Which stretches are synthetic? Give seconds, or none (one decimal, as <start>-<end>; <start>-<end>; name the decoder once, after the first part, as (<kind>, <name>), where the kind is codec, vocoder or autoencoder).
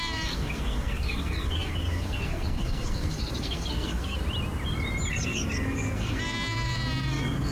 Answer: 0.0-4.2 (codec, SNAC); 5.1-7.5